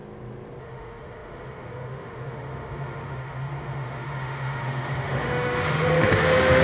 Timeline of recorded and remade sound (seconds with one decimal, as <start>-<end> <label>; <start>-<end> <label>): 0.0-0.6 recorded; 0.6-6.6 remade